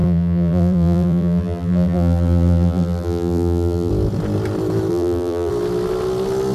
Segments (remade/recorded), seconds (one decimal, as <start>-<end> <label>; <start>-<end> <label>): 0.0-3.9 remade; 3.9-4.9 recorded; 4.9-5.5 remade; 5.5-6.5 recorded